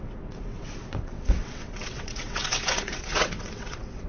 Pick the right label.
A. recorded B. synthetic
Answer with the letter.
B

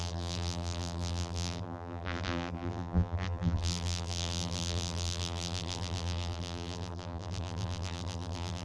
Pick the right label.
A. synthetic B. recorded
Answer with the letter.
A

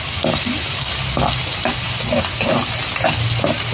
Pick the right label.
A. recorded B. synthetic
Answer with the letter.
A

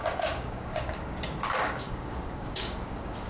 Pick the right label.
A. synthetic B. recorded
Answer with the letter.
A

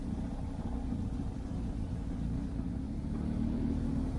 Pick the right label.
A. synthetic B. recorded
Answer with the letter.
B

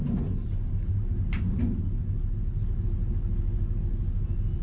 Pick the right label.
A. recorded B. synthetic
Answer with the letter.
A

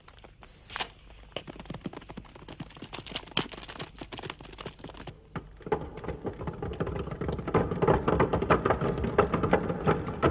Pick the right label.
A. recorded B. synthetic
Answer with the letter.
A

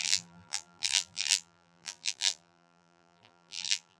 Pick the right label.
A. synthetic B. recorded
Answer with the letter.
A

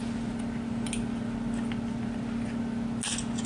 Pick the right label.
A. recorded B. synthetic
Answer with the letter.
A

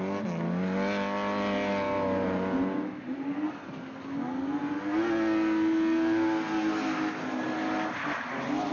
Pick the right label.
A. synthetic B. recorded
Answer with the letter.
B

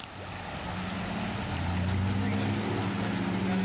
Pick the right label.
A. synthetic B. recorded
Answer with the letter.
B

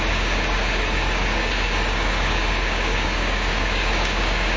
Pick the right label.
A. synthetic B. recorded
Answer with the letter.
A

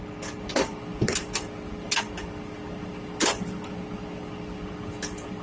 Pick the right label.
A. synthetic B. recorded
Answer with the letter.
B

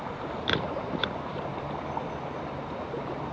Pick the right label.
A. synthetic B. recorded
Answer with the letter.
A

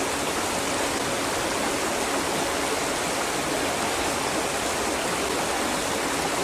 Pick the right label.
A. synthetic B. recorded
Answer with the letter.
B